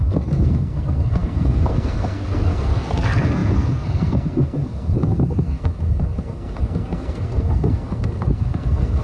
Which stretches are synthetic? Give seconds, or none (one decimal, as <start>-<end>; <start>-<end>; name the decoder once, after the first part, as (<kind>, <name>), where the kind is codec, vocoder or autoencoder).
0.0-9.0 (codec, SNAC)